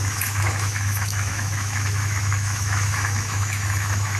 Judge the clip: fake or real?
fake